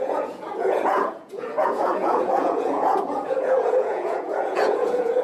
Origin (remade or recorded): remade